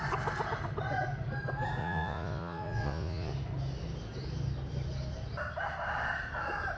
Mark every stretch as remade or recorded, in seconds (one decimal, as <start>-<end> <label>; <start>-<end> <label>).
0.0-1.8 recorded; 1.8-3.3 remade; 3.3-6.8 recorded